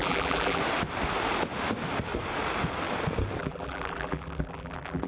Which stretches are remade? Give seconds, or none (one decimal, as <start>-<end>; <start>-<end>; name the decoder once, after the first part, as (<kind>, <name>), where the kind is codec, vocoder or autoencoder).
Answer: 0.0-0.6 (vocoder, BigVGAN v2); 3.4-5.1